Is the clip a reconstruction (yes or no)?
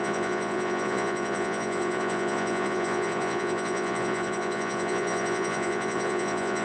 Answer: yes